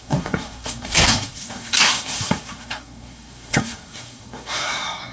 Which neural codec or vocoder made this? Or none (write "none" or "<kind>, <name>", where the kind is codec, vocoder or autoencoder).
codec, SNAC